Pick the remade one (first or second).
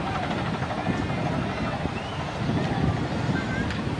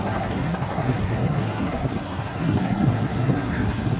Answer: second